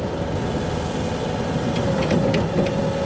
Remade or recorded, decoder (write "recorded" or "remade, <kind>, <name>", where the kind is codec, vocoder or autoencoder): recorded